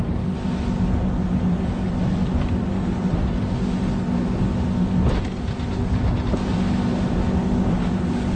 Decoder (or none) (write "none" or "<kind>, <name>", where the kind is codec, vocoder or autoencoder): none